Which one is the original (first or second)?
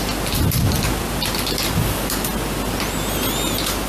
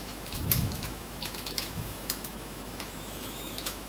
first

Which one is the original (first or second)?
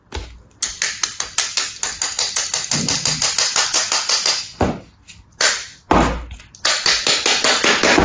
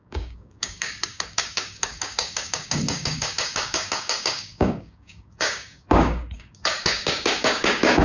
first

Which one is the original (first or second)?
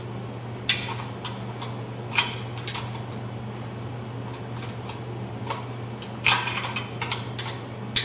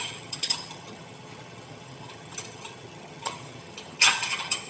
first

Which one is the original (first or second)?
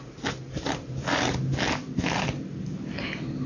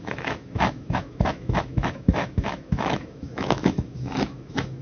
first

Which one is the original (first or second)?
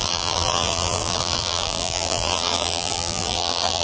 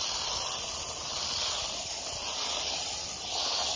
second